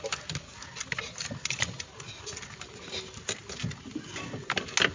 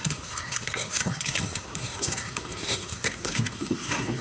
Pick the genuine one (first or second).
first